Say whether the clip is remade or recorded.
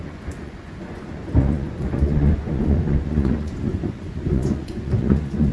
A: remade